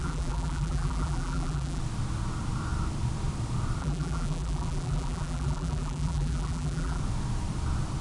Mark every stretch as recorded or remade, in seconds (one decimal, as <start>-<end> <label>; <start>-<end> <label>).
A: 0.0-1.8 remade; 1.8-3.8 recorded; 3.8-7.0 remade; 7.0-8.0 recorded